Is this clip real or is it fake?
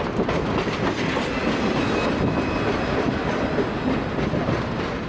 fake